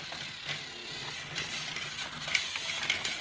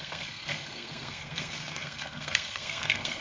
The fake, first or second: second